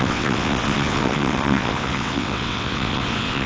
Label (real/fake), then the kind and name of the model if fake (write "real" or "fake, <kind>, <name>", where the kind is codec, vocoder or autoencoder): fake, vocoder, WaveNeXt